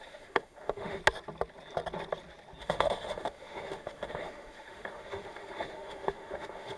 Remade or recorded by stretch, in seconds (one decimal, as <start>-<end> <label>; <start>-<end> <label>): 0.0-1.0 remade; 1.0-2.6 recorded; 2.6-6.8 remade